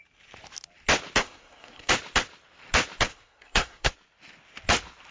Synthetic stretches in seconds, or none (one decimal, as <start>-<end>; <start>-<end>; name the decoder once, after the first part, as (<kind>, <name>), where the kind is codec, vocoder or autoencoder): 1.2-1.9 (codec, SNAC); 3.1-3.9